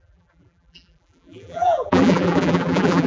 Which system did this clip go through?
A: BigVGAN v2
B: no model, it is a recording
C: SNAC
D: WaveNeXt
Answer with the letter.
A